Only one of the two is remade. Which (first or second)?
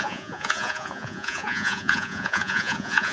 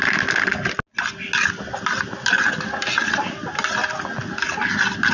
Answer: first